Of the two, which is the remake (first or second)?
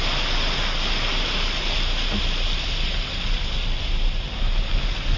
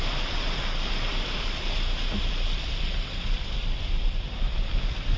second